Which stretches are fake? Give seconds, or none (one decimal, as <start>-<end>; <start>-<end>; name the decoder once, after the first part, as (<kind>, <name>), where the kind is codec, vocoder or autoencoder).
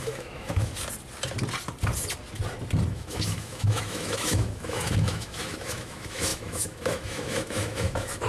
0.0-0.7 (autoencoder, DAC-VAE); 2.9-8.3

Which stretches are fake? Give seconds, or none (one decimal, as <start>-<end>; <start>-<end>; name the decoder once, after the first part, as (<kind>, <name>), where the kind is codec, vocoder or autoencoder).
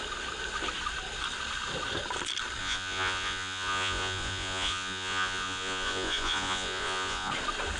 2.6-7.3 (vocoder, Vocos)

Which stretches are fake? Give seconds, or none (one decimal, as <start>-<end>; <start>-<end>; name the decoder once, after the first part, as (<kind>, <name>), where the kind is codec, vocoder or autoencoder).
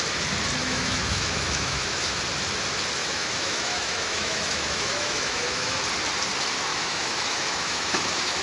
0.6-2.2 (autoencoder, DAC-VAE); 3.0-5.8; 6.7-8.4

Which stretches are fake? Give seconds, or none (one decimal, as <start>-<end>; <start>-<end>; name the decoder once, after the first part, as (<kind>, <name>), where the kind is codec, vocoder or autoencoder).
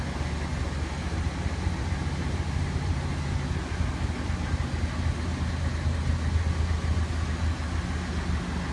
none